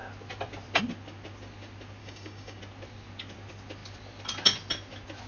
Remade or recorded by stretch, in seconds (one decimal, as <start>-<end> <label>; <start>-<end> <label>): 0.0-2.0 recorded; 2.0-2.6 remade; 2.6-5.3 recorded